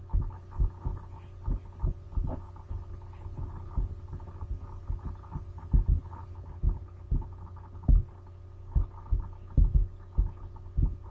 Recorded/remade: recorded